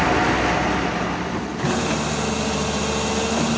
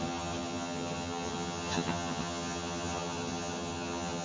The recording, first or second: first